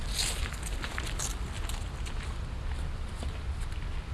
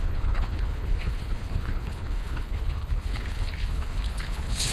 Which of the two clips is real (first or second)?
first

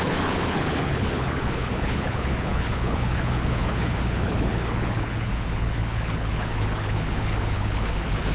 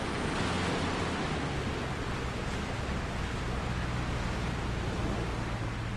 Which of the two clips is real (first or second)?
second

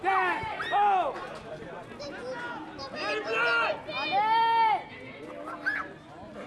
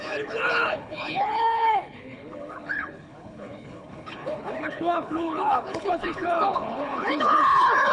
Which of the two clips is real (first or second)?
first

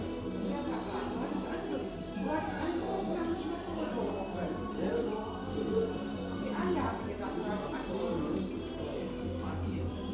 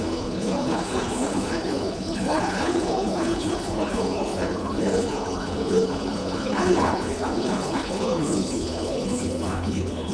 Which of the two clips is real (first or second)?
first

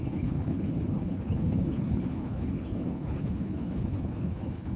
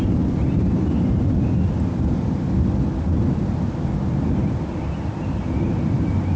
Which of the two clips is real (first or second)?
second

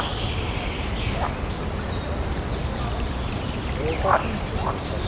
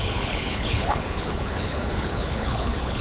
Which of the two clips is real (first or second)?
first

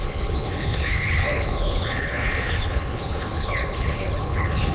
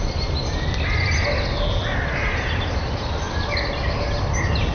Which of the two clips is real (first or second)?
second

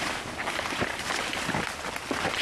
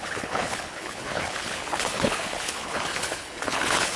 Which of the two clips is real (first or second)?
first